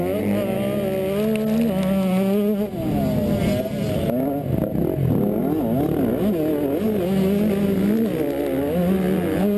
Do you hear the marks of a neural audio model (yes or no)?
no